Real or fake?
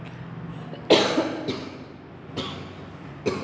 real